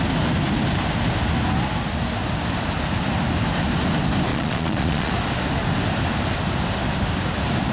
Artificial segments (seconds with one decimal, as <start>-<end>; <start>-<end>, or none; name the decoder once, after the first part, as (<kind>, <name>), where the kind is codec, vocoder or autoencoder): 4.3-5.1 (vocoder, Vocos)